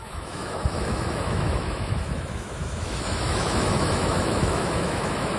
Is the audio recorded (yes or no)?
no